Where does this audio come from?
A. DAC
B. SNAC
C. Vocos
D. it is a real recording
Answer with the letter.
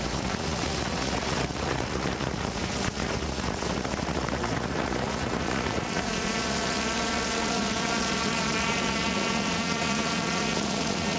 C